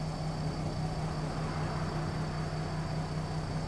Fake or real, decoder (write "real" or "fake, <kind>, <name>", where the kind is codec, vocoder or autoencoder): real